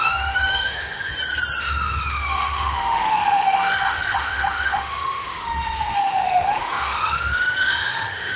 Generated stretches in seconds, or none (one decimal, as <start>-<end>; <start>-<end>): 0.0-1.1; 1.6-8.4